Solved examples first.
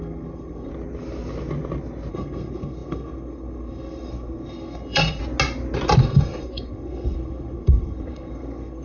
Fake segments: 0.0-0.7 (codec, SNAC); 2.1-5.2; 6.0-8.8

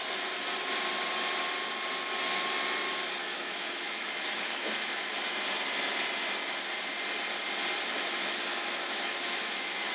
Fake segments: 3.2-5.1 (autoencoder, DAC-VAE); 8.5-9.9

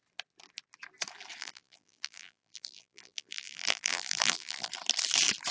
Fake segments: 1.4-4.7 (vocoder, BigVGAN v2)

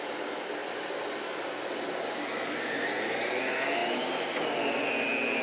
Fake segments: none

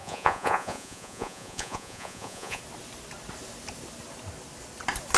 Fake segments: 0.0-2.6 (vocoder, Vocos)